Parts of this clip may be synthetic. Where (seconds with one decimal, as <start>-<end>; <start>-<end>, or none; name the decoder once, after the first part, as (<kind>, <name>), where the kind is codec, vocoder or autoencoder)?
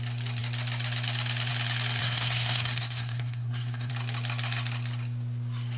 2.0-3.9 (codec, SNAC)